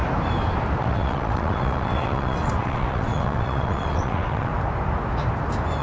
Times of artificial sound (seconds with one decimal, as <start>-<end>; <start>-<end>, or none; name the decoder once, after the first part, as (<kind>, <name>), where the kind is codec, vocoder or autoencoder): 0.8-4.5 (vocoder, WaveNeXt)